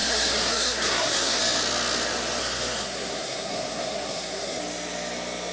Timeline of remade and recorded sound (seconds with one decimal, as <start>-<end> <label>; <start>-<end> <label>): 0.0-1.4 remade; 1.4-2.4 recorded; 2.4-4.6 remade; 4.6-5.5 recorded